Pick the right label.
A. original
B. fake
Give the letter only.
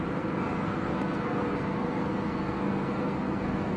B